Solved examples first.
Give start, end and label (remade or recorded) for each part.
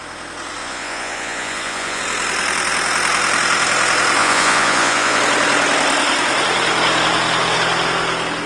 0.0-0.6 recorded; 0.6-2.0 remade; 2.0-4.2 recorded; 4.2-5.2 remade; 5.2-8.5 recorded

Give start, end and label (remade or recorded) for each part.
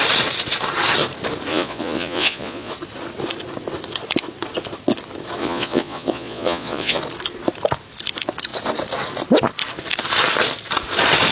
0.0-1.5 recorded; 1.5-2.7 remade; 2.7-5.4 recorded; 5.4-7.0 remade; 7.0-11.3 recorded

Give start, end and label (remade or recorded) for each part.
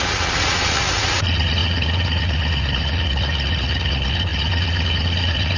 0.0-5.6 remade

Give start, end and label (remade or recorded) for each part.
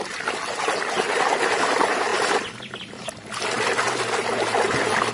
0.0-5.1 recorded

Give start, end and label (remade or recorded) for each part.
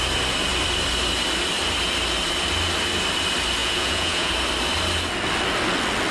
0.0-3.6 recorded; 3.6-4.3 remade; 4.3-6.1 recorded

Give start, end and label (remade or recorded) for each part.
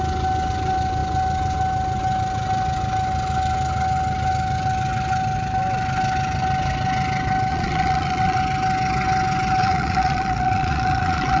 0.0-7.5 recorded; 7.5-8.4 remade; 8.4-9.6 recorded; 9.6-11.4 remade